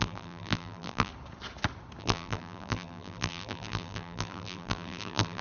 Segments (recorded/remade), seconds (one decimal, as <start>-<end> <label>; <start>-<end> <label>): 0.0-1.1 remade; 1.1-2.0 recorded; 2.0-5.4 remade

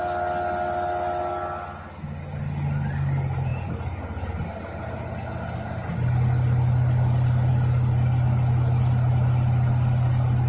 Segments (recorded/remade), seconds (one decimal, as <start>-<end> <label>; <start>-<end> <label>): 0.0-10.5 recorded